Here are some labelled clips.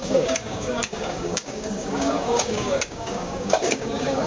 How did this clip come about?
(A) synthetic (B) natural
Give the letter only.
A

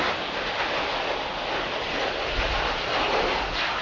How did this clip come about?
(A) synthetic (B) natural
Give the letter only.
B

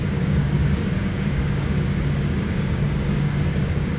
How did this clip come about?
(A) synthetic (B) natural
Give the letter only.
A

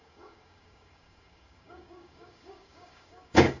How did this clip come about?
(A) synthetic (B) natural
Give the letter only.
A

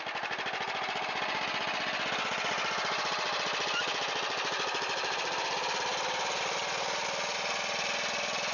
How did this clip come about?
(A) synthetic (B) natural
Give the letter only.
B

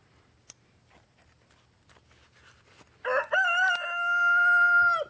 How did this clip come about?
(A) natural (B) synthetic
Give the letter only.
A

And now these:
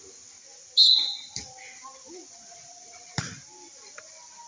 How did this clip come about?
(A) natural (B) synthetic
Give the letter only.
A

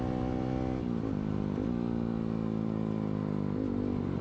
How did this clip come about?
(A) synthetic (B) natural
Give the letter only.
B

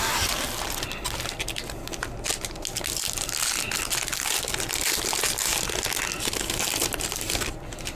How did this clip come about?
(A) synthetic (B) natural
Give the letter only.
B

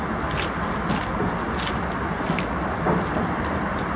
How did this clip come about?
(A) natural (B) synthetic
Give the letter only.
A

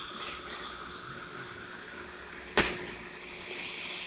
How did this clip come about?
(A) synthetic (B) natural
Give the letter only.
B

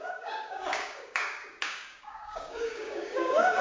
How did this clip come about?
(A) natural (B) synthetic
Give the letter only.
B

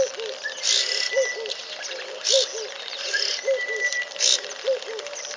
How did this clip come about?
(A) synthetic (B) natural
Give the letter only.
B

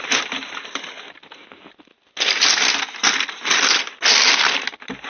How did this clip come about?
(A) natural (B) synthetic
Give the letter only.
A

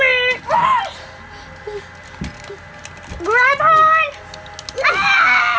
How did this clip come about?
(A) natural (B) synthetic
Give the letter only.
A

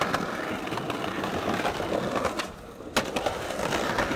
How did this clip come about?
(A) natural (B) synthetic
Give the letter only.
A